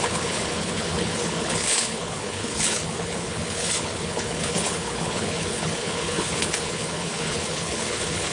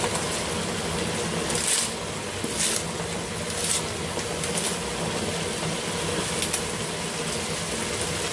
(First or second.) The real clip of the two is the second